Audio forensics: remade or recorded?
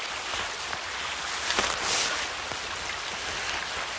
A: recorded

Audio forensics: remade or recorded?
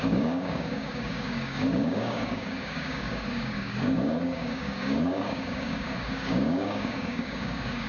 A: remade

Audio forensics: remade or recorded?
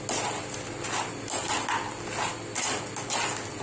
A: recorded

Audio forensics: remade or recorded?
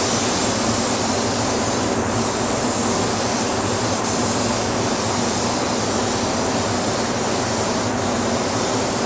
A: recorded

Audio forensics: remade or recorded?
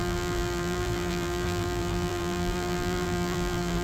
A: remade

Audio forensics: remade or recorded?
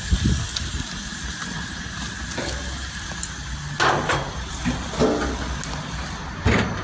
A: recorded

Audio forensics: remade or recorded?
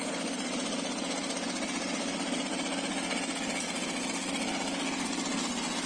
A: recorded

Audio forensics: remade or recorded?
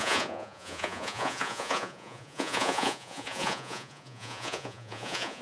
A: remade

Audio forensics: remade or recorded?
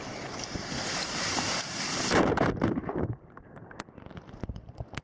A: remade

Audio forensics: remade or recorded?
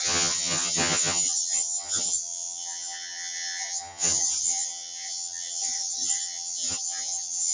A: remade